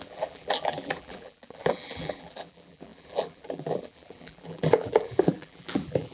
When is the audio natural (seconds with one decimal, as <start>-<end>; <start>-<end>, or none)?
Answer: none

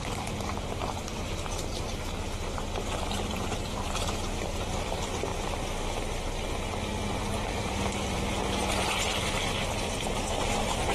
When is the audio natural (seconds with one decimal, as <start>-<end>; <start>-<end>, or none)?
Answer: 1.7-3.2; 5.3-7.5; 8.4-10.4

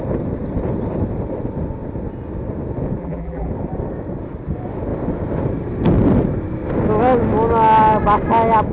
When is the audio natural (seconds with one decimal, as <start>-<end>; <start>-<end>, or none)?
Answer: 0.0-3.0; 3.5-8.7

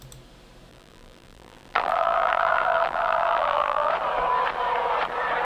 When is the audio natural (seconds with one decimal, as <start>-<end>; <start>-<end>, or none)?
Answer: 0.0-0.7; 3.9-5.4

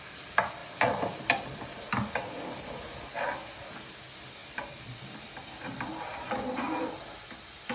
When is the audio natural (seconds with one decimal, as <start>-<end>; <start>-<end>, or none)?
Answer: 0.0-4.4; 5.9-7.7